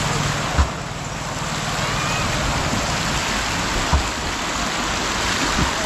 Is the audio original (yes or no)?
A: yes